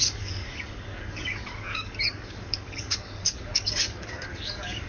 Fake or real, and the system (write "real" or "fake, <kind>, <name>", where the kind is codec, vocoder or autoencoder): fake, codec, DAC